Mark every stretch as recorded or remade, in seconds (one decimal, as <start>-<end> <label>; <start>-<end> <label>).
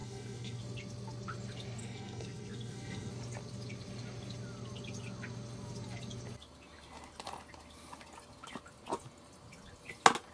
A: 0.0-0.6 remade; 0.6-1.8 recorded; 1.8-3.1 remade; 3.1-10.3 recorded